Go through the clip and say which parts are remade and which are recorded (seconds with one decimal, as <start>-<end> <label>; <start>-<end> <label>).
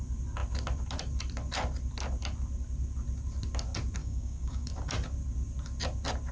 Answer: 0.0-4.0 recorded; 4.0-4.7 remade; 4.7-6.3 recorded